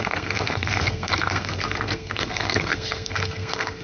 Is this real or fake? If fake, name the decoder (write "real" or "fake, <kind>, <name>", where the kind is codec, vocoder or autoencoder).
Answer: fake, codec, SNAC